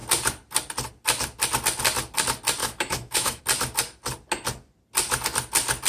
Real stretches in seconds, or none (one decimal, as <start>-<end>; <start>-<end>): 0.0-2.6; 3.4-5.9